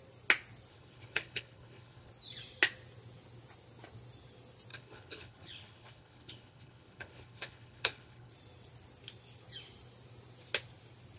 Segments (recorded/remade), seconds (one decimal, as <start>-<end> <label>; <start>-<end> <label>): 0.0-0.7 recorded; 0.7-2.1 remade; 2.1-4.7 recorded; 4.7-8.3 remade; 8.3-11.2 recorded